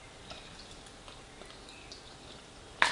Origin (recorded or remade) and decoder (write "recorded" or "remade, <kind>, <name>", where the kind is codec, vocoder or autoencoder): recorded